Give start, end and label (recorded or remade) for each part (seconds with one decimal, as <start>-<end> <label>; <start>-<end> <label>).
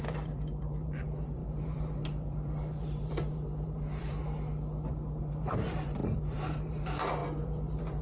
0.0-4.2 remade; 4.2-5.2 recorded; 5.2-8.0 remade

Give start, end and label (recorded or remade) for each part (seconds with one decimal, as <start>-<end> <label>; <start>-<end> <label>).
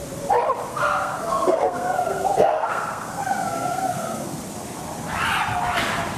0.0-0.7 recorded; 0.7-4.4 remade; 4.4-6.2 recorded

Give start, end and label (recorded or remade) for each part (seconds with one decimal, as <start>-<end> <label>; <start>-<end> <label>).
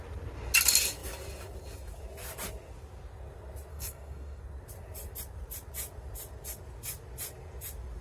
0.0-3.7 recorded; 3.7-4.4 remade; 4.4-8.0 recorded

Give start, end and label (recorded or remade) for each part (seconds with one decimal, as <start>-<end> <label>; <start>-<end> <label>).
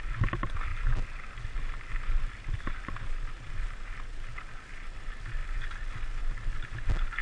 0.0-7.2 recorded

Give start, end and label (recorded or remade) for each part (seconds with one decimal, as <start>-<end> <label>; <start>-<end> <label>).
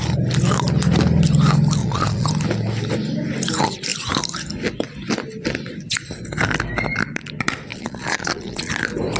0.0-1.8 recorded; 1.8-2.3 remade; 2.3-7.7 recorded; 7.7-8.7 remade; 8.7-9.2 recorded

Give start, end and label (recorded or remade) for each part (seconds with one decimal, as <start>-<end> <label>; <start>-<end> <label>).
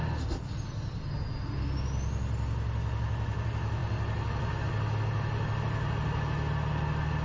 0.0-7.2 recorded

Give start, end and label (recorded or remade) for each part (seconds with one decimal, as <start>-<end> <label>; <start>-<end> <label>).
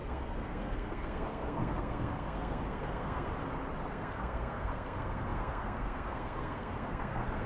0.0-3.3 remade; 3.3-3.9 recorded; 3.9-7.5 remade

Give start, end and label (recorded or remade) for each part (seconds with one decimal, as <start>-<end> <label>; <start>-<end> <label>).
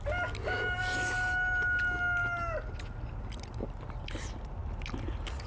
0.0-5.5 recorded